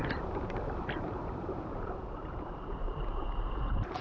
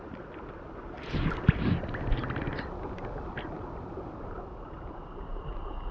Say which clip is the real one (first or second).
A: second